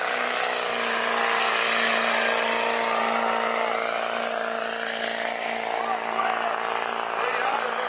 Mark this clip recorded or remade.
recorded